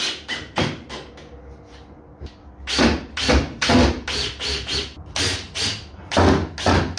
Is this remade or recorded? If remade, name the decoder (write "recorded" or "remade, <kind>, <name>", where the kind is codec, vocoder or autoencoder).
recorded